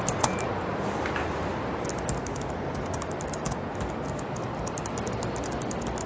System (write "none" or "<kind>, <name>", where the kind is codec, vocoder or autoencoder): none